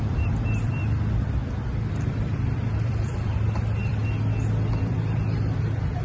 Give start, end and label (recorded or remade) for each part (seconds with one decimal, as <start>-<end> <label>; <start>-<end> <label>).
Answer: 0.0-1.4 remade; 1.4-1.9 recorded; 1.9-4.0 remade; 4.0-4.7 recorded; 4.7-6.0 remade